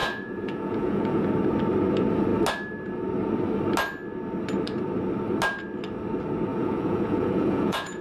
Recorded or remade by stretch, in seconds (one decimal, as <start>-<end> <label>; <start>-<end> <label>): 0.0-1.3 remade; 1.3-6.5 recorded; 6.5-8.0 remade